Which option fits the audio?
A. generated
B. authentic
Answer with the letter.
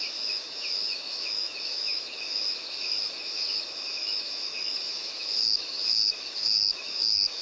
A